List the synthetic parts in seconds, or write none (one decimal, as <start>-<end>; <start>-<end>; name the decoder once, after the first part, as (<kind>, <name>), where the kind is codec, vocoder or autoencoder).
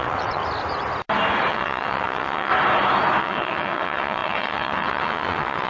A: 0.0-0.4 (vocoder, WaveNeXt); 1.5-2.5; 3.2-5.7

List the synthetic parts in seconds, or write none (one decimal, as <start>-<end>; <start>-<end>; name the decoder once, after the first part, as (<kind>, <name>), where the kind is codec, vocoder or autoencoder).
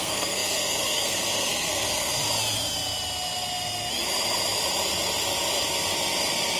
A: 0.0-2.2 (codec, SNAC)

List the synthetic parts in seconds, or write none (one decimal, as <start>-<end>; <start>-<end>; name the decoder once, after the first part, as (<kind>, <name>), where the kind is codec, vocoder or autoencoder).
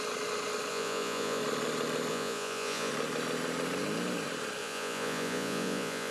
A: 0.7-1.4 (vocoder, Vocos); 2.1-2.9; 4.6-6.1